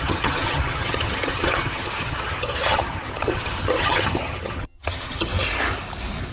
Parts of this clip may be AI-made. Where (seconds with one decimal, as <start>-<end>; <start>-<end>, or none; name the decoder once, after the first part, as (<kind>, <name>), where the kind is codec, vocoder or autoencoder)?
0.0-5.3 (vocoder, HiFi-GAN)